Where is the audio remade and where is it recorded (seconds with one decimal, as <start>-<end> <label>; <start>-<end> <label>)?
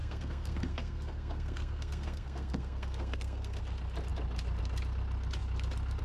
0.0-3.6 remade; 3.6-6.0 recorded